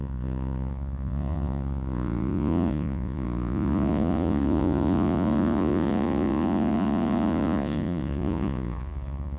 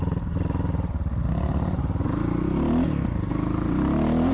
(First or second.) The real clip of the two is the second